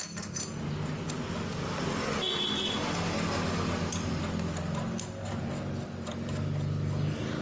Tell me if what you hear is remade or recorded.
recorded